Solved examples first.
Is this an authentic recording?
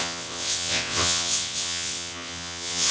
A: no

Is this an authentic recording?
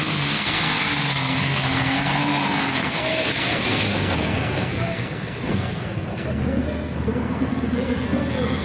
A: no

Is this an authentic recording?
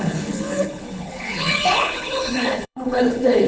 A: no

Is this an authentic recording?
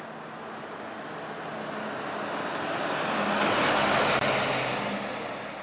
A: yes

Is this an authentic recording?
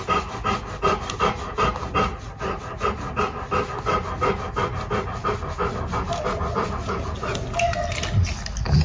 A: yes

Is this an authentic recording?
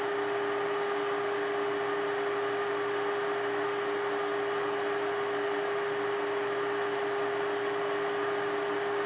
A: yes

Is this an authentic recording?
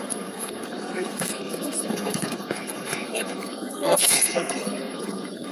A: no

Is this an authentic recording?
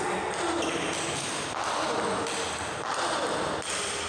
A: yes